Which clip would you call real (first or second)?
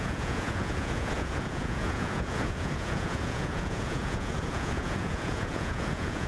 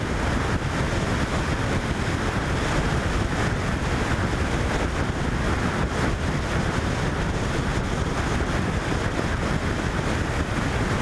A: second